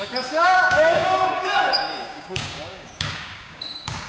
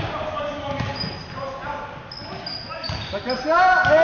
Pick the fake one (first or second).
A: first